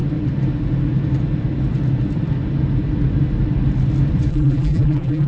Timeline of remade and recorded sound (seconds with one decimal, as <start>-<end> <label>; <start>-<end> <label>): 0.0-4.3 recorded; 4.3-5.3 remade